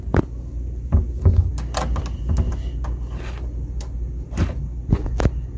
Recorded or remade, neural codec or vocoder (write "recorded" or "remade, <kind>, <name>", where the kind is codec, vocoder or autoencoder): recorded